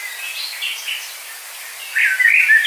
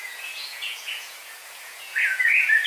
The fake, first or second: second